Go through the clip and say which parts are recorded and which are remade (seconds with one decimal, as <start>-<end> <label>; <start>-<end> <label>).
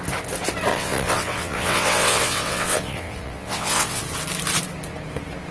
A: 0.0-0.7 recorded; 0.7-4.0 remade; 4.0-5.5 recorded